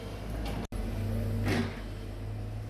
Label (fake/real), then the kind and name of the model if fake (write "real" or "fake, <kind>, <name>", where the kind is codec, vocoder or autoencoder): real